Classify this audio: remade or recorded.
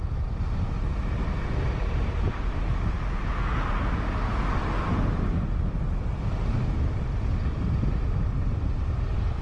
recorded